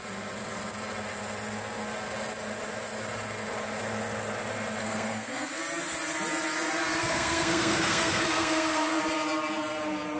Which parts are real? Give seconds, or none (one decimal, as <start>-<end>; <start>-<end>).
0.0-4.8; 5.6-7.0; 9.0-10.2